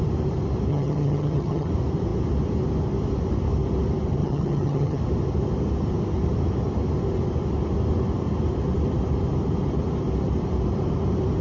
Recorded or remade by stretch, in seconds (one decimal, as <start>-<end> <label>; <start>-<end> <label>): 0.0-0.7 recorded; 0.7-1.7 remade; 1.7-4.2 recorded; 4.2-5.0 remade; 5.0-11.4 recorded